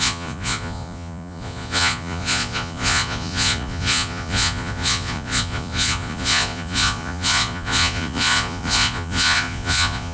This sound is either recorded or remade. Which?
remade